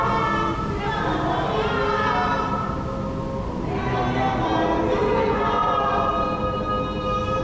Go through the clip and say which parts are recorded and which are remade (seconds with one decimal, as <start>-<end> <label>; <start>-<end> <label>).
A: 0.0-5.0 recorded; 5.0-6.1 remade; 6.1-7.4 recorded